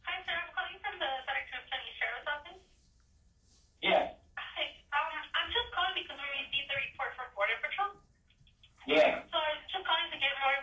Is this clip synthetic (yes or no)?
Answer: no